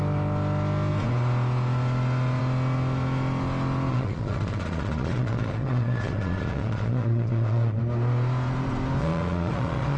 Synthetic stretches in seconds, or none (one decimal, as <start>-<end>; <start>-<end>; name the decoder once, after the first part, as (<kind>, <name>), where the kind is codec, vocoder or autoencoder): 3.9-7.8 (vocoder, Vocos); 9.0-10.0